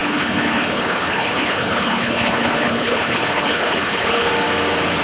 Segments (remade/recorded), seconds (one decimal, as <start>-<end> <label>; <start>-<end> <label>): 0.0-4.3 remade; 4.3-5.0 recorded